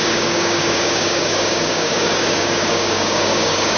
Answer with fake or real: fake